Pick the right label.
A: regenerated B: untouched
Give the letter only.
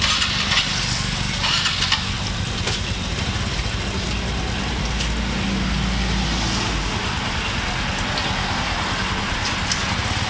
B